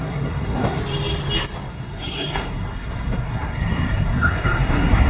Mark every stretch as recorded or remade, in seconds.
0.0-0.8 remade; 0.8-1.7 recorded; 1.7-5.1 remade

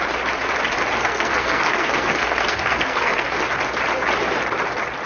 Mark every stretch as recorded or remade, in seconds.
0.0-1.0 recorded; 1.0-3.4 remade; 3.4-5.1 recorded